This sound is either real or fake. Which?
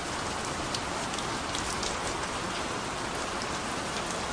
real